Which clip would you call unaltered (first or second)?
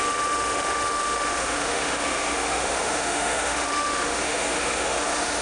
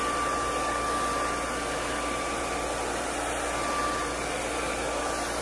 second